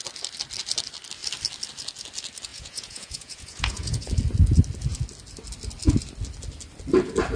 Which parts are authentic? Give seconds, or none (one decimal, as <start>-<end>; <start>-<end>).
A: 0.0-2.5; 4.1-7.4